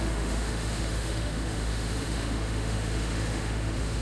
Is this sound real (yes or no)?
no